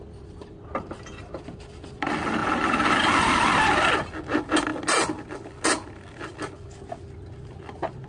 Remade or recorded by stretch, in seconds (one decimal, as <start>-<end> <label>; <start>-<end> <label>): 0.0-8.1 recorded